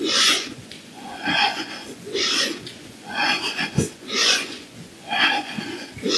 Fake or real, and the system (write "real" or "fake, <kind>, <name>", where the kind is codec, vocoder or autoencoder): fake, vocoder, Vocos